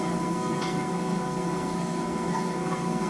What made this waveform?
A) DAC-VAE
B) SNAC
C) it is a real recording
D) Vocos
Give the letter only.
B